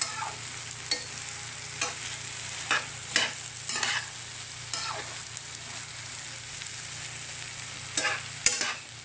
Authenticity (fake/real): real